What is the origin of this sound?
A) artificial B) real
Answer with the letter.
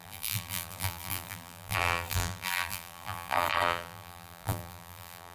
A